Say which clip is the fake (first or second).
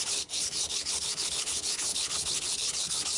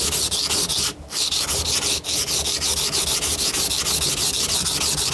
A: first